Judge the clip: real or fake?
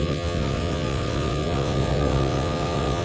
fake